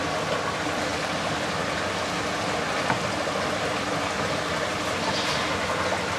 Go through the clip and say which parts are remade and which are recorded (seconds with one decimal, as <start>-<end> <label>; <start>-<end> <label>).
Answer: 0.0-6.2 recorded